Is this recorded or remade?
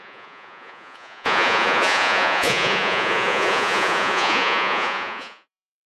remade